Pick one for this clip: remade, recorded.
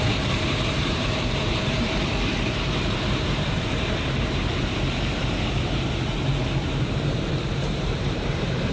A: remade